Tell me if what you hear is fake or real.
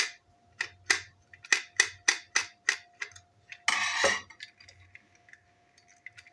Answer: real